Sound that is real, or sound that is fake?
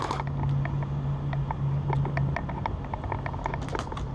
real